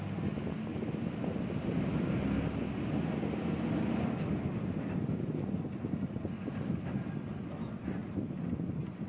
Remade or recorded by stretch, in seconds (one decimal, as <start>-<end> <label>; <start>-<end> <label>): 0.0-9.1 recorded